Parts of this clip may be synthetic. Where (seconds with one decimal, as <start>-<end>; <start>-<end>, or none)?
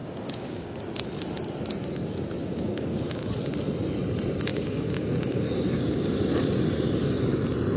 0.0-0.8; 2.4-3.3; 4.5-6.2